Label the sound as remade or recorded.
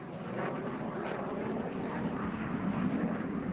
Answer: recorded